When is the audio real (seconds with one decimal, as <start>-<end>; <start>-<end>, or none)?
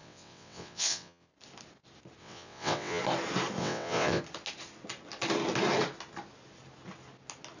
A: 1.3-2.2; 3.0-3.6; 4.2-7.6